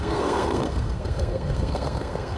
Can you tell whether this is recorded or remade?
remade